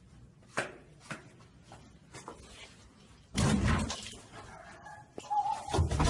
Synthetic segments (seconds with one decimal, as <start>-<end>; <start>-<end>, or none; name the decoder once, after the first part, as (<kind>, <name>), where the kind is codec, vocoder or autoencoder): none